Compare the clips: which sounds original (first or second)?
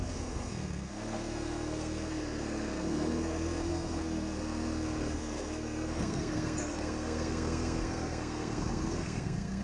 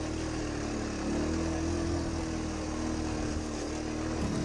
second